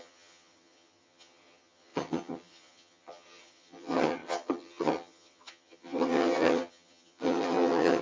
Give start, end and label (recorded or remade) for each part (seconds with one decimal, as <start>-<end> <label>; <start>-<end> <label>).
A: 0.0-8.0 remade